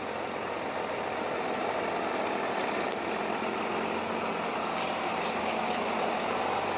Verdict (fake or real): real